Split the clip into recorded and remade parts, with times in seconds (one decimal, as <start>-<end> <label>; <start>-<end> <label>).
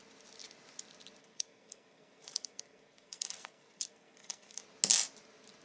0.0-1.2 recorded; 1.2-4.6 remade; 4.6-5.6 recorded